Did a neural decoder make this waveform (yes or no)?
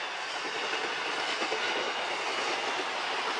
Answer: no